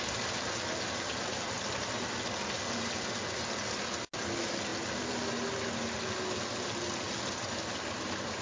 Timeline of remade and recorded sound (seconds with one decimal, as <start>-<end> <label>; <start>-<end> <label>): 0.0-8.4 recorded